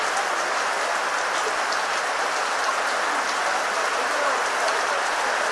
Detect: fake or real real